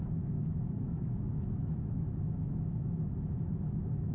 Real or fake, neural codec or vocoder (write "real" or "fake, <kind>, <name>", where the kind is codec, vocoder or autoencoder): fake, autoencoder, DAC-VAE